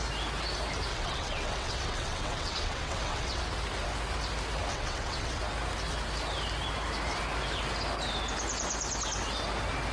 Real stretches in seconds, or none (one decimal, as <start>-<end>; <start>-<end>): 0.0-0.9; 3.4-4.7; 5.4-9.9